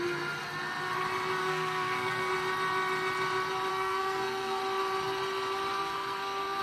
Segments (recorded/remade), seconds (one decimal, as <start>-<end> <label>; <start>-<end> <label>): 0.0-1.4 recorded; 1.4-2.3 remade; 2.3-3.7 recorded; 3.7-4.6 remade; 4.6-5.8 recorded; 5.8-6.6 remade